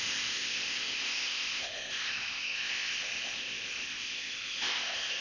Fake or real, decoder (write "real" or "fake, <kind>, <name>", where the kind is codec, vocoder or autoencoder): fake, codec, ZipCodec